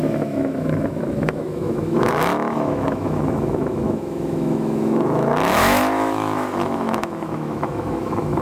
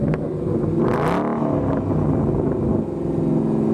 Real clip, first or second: second